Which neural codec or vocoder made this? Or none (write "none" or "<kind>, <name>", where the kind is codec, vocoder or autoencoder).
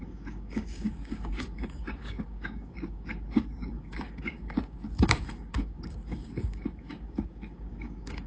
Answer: codec, DAC